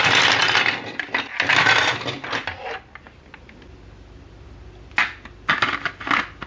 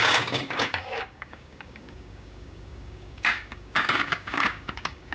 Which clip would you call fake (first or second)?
second